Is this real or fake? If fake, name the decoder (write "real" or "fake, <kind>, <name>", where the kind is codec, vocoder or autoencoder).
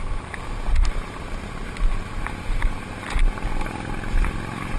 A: real